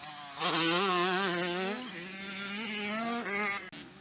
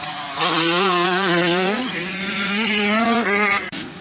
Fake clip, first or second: second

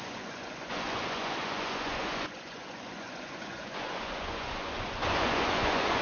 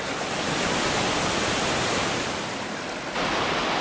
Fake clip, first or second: first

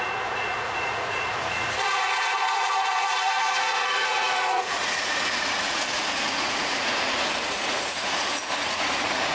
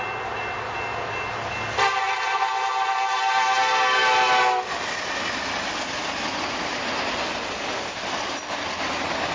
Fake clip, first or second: first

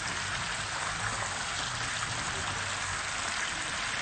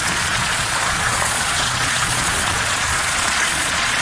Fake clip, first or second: second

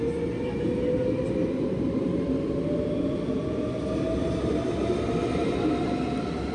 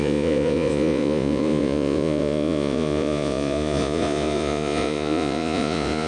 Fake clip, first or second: second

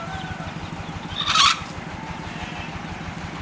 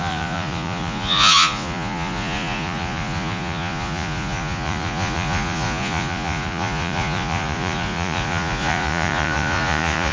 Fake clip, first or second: second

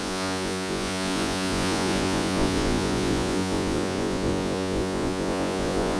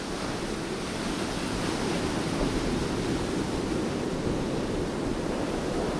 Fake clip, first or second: first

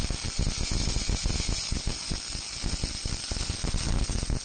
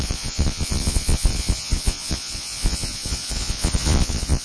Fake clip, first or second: second